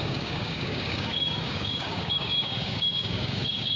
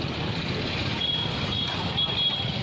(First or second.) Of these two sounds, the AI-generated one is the first